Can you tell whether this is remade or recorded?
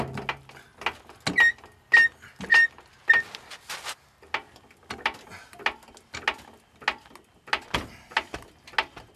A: recorded